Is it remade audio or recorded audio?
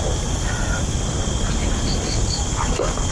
recorded